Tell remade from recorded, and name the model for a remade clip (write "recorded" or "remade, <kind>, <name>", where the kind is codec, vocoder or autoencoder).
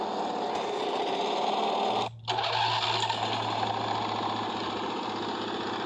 recorded